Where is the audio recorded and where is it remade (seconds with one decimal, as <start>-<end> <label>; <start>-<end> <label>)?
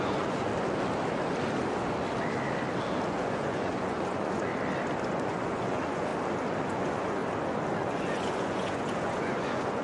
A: 0.0-0.5 remade; 0.5-3.1 recorded; 3.1-4.5 remade; 4.5-5.1 recorded; 5.1-6.1 remade; 6.1-6.6 recorded; 6.6-7.2 remade; 7.2-7.8 recorded; 7.8-9.8 remade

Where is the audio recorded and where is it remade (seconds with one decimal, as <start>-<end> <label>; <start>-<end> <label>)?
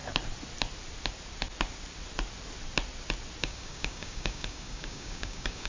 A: 0.0-3.4 recorded; 3.4-5.7 remade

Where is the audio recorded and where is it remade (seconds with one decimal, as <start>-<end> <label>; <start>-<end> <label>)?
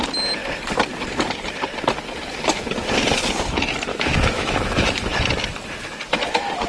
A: 0.0-3.9 recorded; 3.9-5.1 remade; 5.1-6.7 recorded